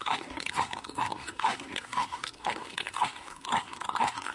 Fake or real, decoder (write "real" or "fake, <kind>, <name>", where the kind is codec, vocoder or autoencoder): fake, codec, SNAC